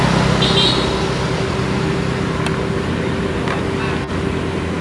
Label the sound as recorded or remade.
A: recorded